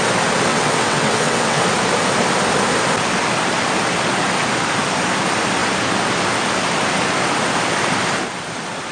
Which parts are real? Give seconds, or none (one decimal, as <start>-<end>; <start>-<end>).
0.0-0.5; 1.6-8.9